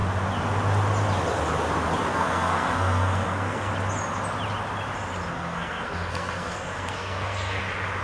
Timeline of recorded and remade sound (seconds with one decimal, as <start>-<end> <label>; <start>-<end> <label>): 0.0-2.1 recorded; 2.1-3.7 remade; 3.7-5.3 recorded; 5.3-7.6 remade; 7.6-8.0 recorded